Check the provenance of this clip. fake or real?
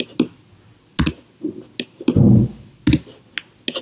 real